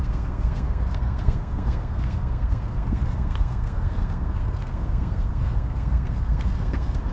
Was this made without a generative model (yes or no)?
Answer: no